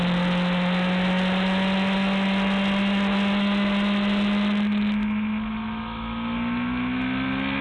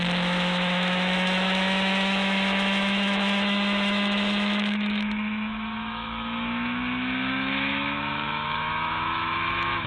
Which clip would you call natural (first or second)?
first